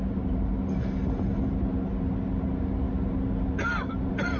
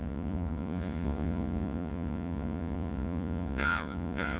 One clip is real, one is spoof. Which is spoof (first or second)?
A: second